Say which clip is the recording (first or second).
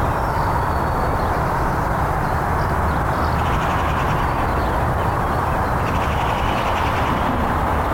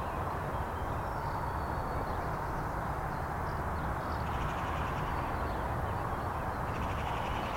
second